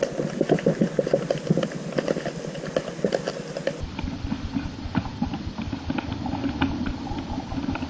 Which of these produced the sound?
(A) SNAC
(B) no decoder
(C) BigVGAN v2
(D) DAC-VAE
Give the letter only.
B